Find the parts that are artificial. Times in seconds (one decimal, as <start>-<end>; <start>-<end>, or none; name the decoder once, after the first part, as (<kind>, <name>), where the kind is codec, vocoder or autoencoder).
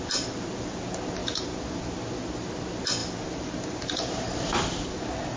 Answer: 1.2-1.8 (vocoder, BigVGAN v2); 3.0-4.6